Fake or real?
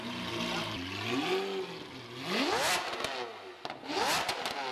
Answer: real